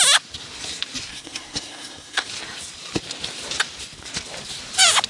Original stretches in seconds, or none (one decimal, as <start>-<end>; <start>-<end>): 0.0-1.1; 2.3-5.1